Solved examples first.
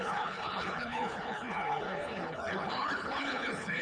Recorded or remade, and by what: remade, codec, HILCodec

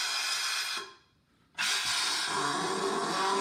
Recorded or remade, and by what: recorded